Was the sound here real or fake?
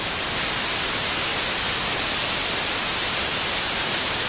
real